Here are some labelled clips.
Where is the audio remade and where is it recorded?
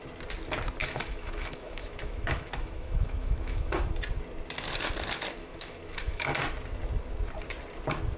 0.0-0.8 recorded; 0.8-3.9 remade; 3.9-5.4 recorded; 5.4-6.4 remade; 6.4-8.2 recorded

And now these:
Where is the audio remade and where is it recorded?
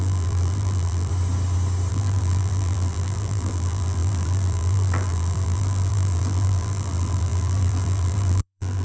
0.0-1.1 remade; 1.1-1.9 recorded; 1.9-8.8 remade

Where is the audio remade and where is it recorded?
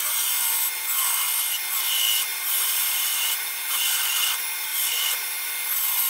0.0-2.3 recorded; 2.3-3.8 remade; 3.8-6.1 recorded